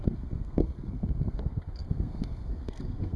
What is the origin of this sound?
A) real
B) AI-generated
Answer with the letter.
B